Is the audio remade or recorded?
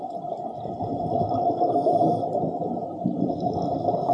recorded